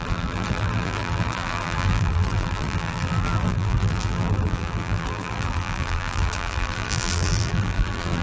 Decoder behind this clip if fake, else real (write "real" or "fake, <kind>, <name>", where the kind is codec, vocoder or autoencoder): fake, vocoder, BigVGAN v2